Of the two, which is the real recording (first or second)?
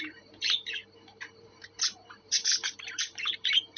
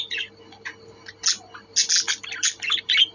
second